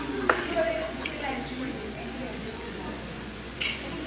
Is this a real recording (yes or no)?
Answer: no